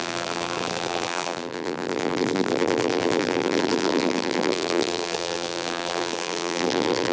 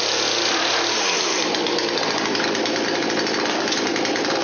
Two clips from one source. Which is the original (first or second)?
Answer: second